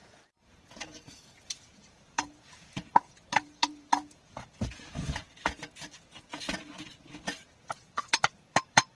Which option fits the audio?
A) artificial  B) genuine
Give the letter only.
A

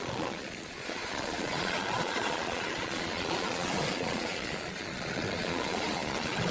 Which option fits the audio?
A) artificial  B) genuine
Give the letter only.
A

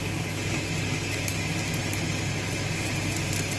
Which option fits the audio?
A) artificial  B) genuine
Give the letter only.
B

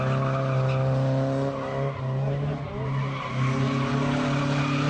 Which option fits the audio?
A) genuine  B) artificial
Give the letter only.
A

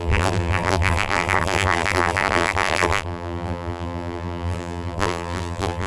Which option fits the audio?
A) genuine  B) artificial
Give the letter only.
B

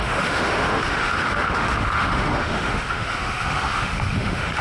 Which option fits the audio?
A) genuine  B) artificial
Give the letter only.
B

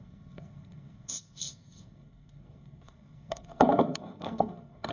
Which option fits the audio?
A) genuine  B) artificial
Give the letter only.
B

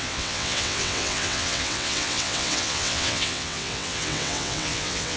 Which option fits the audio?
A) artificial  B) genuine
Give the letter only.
A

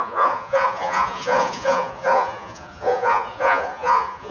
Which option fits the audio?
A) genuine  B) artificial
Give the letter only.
B